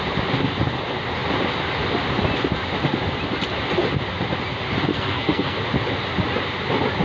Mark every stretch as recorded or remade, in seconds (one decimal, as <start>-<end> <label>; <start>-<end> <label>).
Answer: 0.0-4.9 recorded; 4.9-5.6 remade; 5.6-7.0 recorded